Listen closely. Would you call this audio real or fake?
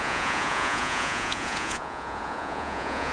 fake